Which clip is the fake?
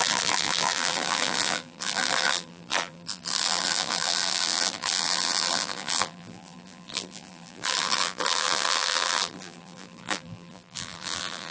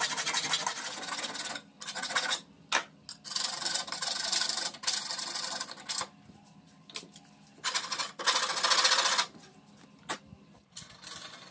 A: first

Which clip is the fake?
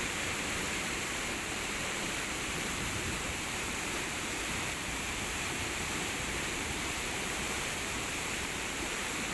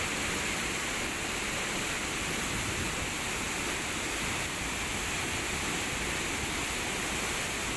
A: first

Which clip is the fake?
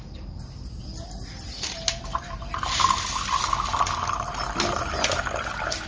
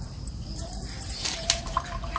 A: second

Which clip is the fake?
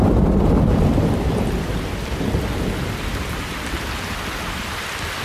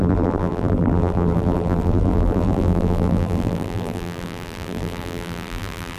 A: second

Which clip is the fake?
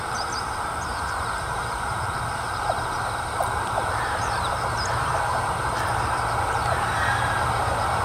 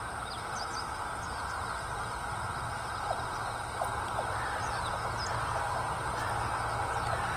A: first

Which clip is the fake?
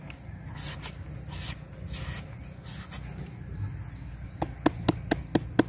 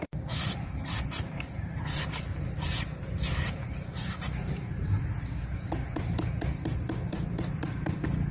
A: second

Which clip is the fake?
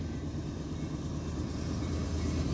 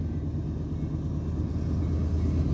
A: first